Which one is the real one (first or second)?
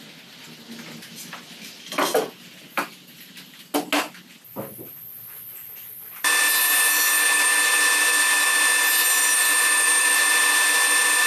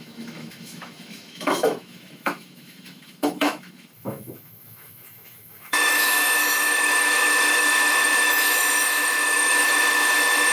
first